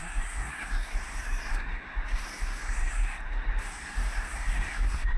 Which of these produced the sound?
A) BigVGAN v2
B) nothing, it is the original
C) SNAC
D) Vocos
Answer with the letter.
C